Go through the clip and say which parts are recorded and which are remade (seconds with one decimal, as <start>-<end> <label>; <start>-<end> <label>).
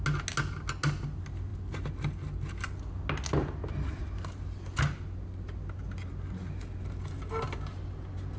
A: 0.0-8.4 recorded